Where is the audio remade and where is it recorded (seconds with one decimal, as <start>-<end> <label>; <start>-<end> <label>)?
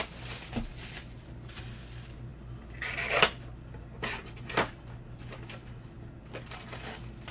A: 0.0-7.3 recorded